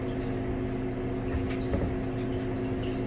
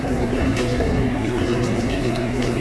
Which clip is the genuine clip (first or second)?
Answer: first